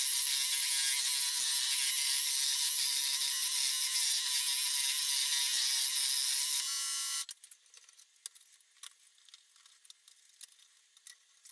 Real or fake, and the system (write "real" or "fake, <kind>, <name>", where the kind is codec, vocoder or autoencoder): real